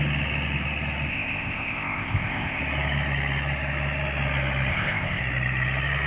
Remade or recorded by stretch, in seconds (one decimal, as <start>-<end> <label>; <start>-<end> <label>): 0.0-1.1 recorded; 1.1-2.6 remade; 2.6-4.7 recorded; 4.7-5.2 remade; 5.2-6.1 recorded